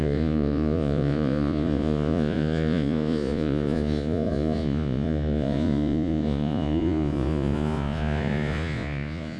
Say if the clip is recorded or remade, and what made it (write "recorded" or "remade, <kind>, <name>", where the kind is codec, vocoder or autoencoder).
remade, vocoder, Vocos